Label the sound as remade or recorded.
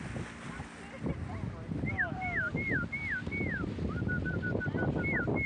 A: recorded